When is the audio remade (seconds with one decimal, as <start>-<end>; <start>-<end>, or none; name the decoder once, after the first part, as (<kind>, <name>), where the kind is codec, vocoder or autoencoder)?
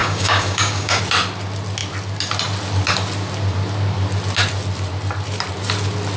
0.0-1.0 (codec, DAC)